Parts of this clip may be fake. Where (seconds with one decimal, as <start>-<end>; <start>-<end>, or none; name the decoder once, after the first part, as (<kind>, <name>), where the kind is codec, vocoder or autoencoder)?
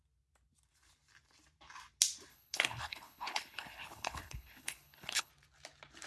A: 2.3-5.3 (codec, HILCodec)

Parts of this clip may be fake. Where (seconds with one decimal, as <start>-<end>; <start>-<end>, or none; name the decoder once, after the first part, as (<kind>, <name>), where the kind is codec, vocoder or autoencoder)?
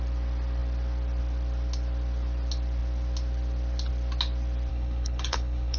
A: 4.7-5.8 (codec, HILCodec)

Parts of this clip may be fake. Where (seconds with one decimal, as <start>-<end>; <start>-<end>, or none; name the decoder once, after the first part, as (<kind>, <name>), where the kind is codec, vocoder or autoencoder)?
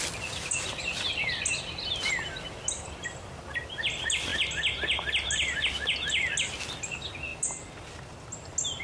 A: none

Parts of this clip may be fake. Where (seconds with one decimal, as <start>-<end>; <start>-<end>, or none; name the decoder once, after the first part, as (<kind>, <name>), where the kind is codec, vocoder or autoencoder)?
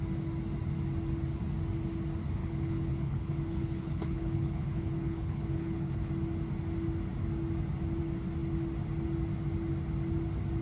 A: 2.4-6.1 (codec, HILCodec)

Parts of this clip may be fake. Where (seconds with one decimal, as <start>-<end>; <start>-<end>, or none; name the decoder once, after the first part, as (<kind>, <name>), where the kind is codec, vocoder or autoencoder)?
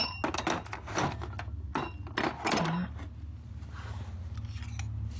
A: none